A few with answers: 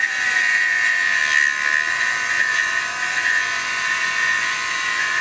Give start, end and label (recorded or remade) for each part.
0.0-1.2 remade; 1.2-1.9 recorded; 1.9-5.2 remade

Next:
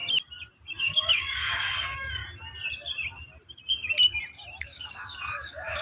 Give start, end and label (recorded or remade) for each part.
0.0-0.8 recorded; 0.8-2.2 remade; 2.2-4.6 recorded; 4.6-5.8 remade